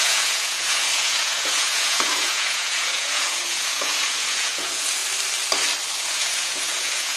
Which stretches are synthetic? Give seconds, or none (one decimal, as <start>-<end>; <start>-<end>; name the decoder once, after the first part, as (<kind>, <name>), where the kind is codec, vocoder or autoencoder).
0.0-5.0 (vocoder, Vocos); 6.0-7.2